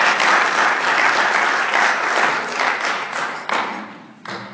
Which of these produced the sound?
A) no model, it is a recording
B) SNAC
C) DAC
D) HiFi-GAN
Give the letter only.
A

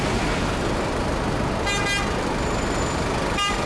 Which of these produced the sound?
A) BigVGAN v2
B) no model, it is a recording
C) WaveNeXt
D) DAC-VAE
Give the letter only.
B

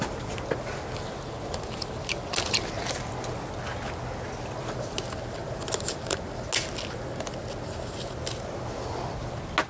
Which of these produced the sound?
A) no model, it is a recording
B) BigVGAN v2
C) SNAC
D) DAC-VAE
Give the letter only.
A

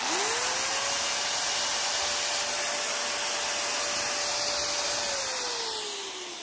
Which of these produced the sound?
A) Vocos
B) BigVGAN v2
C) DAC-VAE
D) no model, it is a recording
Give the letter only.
D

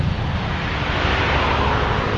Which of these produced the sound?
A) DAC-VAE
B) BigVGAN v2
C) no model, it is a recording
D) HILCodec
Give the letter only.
C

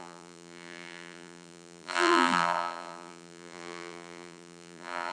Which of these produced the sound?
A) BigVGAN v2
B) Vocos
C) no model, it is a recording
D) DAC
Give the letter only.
A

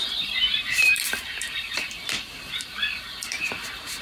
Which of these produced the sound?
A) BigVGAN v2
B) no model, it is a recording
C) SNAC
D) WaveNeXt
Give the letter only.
A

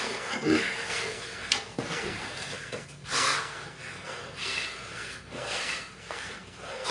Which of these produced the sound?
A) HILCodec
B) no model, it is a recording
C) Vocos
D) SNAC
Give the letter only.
D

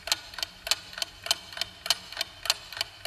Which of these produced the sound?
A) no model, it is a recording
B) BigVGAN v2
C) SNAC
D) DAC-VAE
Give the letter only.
A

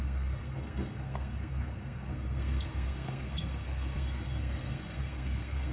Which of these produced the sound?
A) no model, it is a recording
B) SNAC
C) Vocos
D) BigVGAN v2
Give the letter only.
B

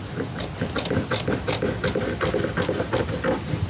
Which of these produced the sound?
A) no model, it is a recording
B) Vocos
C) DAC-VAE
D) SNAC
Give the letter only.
A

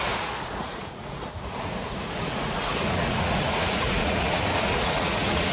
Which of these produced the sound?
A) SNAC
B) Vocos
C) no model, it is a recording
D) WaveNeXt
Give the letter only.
B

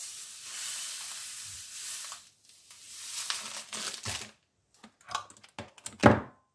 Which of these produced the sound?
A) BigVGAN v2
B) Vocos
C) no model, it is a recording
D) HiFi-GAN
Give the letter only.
C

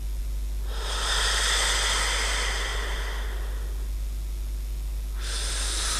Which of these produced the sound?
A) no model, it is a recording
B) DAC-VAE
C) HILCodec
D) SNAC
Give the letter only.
A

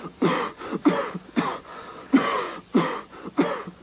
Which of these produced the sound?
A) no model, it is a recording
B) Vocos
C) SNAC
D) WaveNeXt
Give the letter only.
B